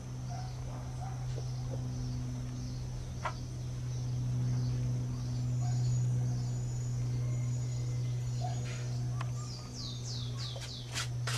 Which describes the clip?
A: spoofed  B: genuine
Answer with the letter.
B